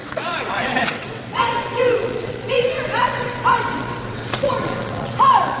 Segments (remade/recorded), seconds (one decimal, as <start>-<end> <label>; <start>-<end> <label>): 0.0-5.6 remade